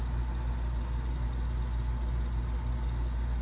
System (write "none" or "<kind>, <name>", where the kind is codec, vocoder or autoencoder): none